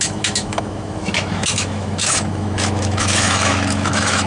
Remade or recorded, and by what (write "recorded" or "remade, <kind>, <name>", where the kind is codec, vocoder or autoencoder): remade, autoencoder, DAC-VAE